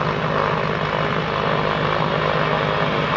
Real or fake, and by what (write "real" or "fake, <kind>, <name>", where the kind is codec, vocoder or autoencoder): real